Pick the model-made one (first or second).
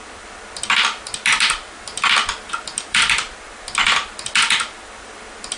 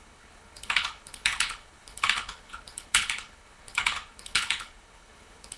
second